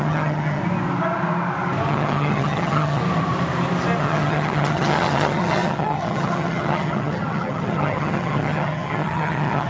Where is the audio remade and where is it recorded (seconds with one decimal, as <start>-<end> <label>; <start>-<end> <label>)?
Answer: 0.0-0.6 remade; 0.6-1.9 recorded; 1.9-3.0 remade; 3.0-4.0 recorded; 4.0-9.7 remade